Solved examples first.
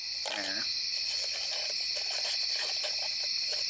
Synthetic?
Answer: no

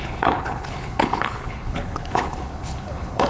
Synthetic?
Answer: yes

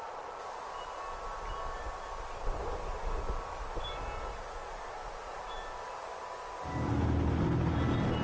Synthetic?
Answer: no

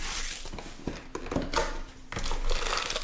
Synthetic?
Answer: no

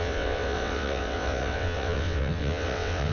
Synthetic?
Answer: yes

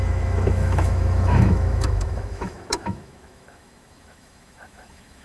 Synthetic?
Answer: yes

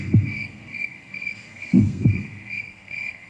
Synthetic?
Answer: yes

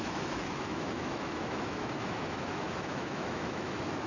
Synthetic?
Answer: yes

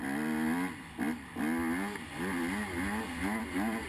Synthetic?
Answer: no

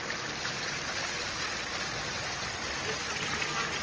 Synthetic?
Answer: no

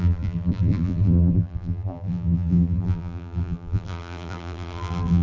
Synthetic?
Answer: yes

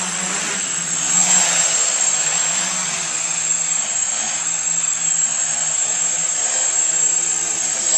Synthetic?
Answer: no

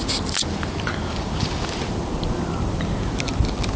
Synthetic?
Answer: no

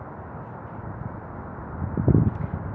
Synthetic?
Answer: no